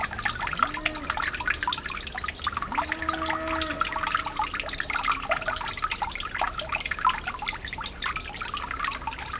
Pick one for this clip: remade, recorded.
recorded